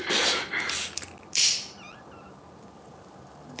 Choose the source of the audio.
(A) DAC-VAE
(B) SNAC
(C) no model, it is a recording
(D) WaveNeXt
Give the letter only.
C